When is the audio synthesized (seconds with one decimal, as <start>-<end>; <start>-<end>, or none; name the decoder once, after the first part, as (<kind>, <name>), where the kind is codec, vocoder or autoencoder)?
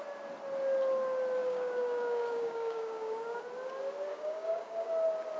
1.4-3.4 (codec, DAC); 4.1-4.9